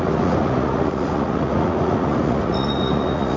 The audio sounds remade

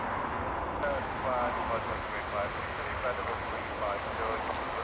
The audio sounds recorded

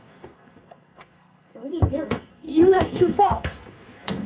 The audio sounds remade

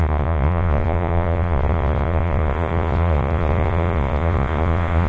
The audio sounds remade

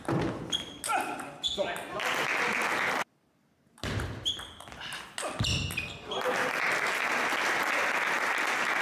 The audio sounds recorded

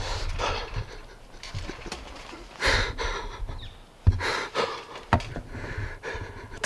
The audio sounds recorded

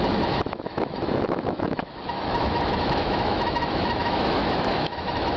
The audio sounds remade